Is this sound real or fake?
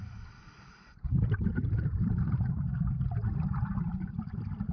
fake